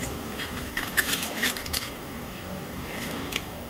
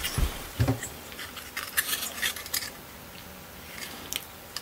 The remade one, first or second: first